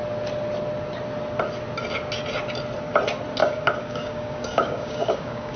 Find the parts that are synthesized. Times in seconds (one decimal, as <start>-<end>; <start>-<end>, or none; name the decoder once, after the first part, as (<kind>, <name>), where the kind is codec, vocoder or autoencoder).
3.4-5.6 (codec, DAC)